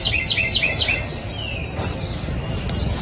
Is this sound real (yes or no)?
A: yes